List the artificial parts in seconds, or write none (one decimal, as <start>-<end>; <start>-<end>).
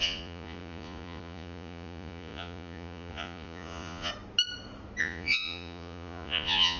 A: 0.0-4.1; 5.0-6.8